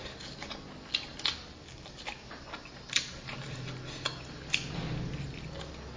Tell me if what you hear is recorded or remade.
recorded